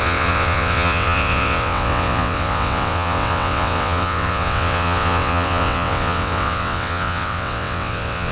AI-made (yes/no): yes